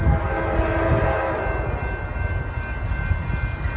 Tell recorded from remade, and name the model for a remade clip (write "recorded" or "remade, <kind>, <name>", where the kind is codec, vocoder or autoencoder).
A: recorded